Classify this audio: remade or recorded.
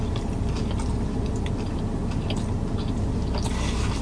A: recorded